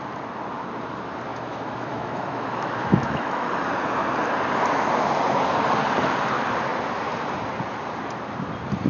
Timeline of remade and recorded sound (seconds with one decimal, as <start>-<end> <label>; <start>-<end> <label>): 0.0-1.3 recorded; 1.3-3.5 remade; 3.5-8.9 recorded